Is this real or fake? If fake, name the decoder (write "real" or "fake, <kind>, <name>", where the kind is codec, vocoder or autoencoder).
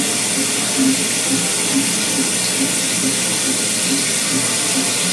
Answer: real